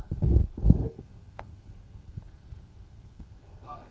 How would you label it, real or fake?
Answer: fake